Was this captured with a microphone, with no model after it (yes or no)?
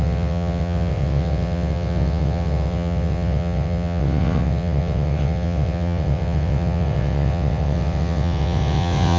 no